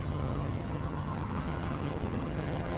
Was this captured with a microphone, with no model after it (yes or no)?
no